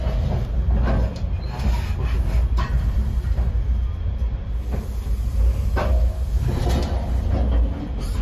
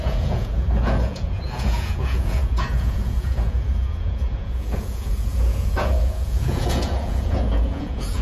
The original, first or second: first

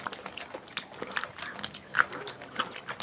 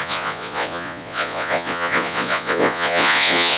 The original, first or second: first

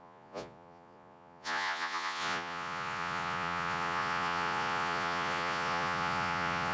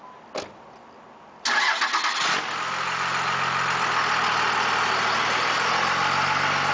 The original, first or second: second